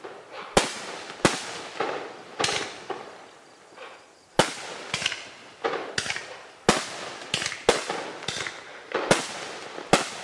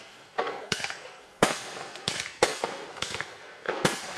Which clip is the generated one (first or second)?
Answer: second